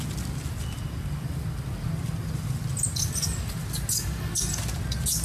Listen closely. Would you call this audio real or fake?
real